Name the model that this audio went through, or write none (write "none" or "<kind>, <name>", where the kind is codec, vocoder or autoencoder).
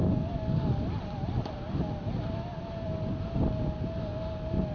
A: none